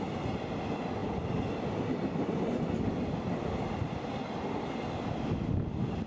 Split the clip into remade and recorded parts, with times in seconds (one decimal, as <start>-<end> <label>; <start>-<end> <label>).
0.0-6.1 recorded